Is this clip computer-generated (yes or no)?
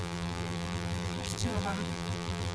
yes